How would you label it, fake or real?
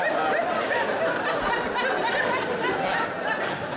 fake